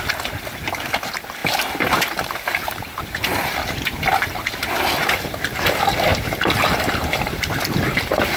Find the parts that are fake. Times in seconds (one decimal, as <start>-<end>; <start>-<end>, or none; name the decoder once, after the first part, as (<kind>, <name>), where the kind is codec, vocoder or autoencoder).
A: 1.4-3.0 (vocoder, BigVGAN v2); 6.1-7.7